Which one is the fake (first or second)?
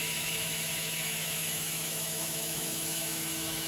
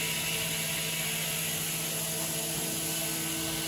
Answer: first